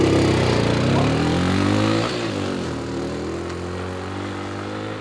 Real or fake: real